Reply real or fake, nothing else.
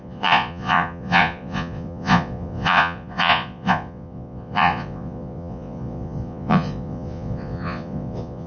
fake